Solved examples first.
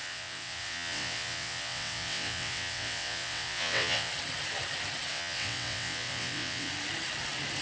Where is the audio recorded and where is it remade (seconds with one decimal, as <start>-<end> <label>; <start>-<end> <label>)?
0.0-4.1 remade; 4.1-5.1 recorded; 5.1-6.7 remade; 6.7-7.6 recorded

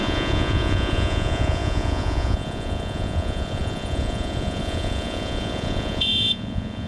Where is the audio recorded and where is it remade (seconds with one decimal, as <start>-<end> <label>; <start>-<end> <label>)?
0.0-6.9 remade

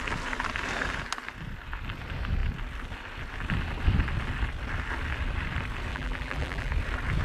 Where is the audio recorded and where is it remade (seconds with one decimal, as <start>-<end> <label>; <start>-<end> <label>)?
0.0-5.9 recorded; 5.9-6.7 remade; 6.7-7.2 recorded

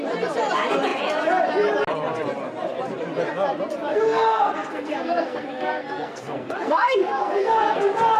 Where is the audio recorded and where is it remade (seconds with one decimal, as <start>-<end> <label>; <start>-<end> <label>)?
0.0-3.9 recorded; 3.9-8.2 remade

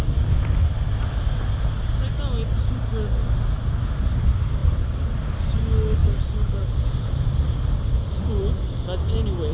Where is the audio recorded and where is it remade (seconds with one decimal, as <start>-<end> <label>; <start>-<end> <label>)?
0.0-4.6 recorded; 4.6-5.1 remade; 5.1-6.0 recorded; 6.0-8.3 remade; 8.3-9.5 recorded